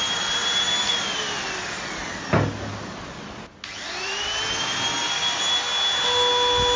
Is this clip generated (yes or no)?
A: no